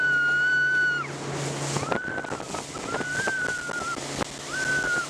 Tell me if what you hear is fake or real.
real